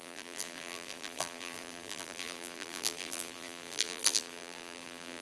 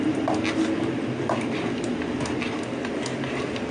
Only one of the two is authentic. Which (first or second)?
second